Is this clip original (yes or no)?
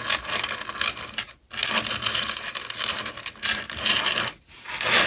yes